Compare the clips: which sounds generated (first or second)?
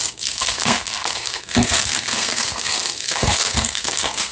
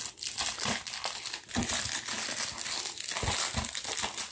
first